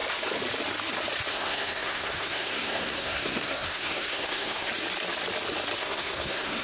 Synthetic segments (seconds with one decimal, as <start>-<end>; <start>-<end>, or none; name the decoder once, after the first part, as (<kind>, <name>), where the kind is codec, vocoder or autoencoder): 1.3-4.7 (codec, SNAC); 5.8-6.6